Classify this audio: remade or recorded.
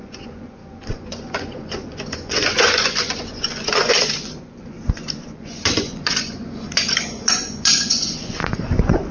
remade